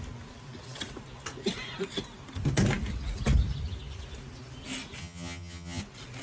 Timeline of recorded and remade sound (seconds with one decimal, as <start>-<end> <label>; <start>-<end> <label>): 0.0-5.0 recorded; 5.0-5.8 remade; 5.8-6.2 recorded